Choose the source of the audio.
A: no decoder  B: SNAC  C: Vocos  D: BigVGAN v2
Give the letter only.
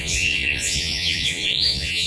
C